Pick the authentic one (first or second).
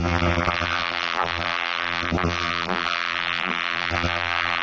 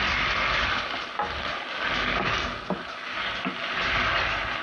second